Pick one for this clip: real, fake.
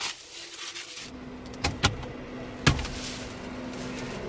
real